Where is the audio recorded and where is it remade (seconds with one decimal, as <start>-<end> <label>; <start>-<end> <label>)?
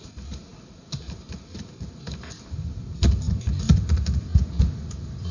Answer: 0.0-5.3 recorded